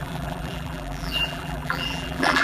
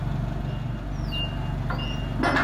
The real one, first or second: second